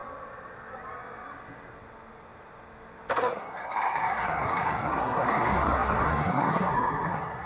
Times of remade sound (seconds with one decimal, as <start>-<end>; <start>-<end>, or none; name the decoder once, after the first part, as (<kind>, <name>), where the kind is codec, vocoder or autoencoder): 3.1-7.5 (codec, SNAC)